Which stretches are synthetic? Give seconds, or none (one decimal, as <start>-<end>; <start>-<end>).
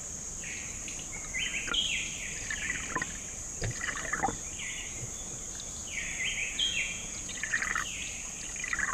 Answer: 6.4-7.6